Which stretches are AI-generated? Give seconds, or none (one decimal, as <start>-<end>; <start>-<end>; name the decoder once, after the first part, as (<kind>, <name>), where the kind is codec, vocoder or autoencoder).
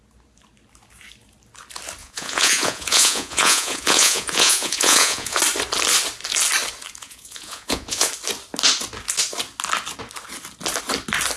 2.0-5.4 (vocoder, Vocos); 7.0-8.1